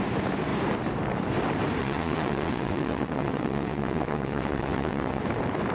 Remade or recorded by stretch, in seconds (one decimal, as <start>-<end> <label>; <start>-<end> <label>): 0.0-1.8 recorded; 1.8-5.2 remade; 5.2-5.7 recorded